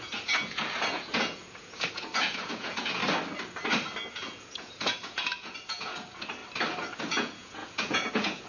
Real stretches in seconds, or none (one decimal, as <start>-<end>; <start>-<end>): 3.0-4.1; 6.4-7.0